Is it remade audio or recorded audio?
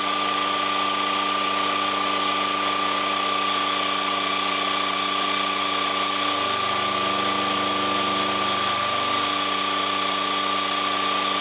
recorded